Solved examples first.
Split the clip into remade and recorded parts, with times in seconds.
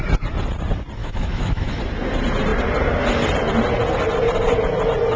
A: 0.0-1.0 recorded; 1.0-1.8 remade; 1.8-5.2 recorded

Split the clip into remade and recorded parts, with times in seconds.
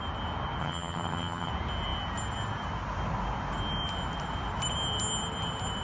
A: 0.0-0.6 recorded; 0.6-1.5 remade; 1.5-5.8 recorded